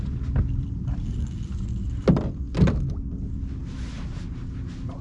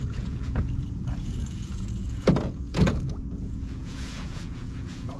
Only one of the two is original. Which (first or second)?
first